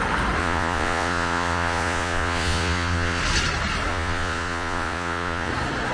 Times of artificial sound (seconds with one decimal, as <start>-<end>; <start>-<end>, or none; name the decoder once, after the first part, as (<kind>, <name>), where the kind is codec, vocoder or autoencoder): 0.4-3.2 (vocoder, Vocos); 3.9-5.5